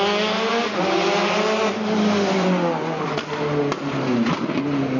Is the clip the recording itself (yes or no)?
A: yes